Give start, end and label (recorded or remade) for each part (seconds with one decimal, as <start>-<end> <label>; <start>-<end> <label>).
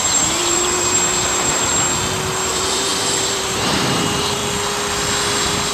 0.0-1.7 remade; 1.7-2.5 recorded; 2.5-4.4 remade; 4.4-5.7 recorded